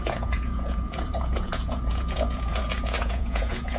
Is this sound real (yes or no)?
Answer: no